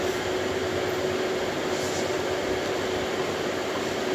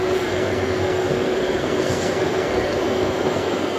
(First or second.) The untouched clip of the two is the first